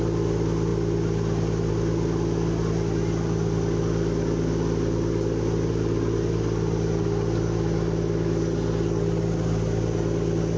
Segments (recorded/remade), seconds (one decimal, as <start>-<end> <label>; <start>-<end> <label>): 0.0-10.6 recorded